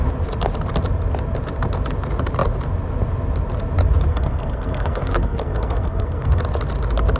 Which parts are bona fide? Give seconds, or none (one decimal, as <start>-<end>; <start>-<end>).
0.0-4.1; 6.4-7.2